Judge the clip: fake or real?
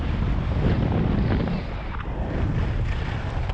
real